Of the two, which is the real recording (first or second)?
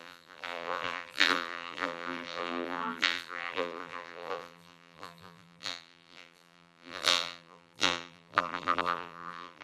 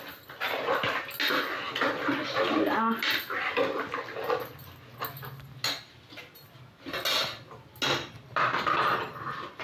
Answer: second